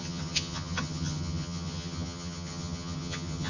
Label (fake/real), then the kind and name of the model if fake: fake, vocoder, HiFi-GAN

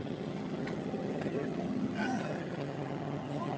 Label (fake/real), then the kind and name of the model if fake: fake, vocoder, HiFi-GAN